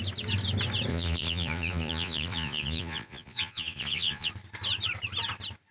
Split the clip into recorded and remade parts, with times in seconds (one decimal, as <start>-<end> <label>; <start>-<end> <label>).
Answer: 0.0-0.9 recorded; 0.9-4.3 remade; 4.3-5.7 recorded